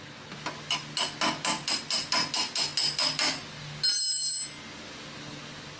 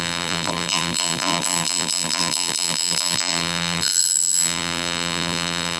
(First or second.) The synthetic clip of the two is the second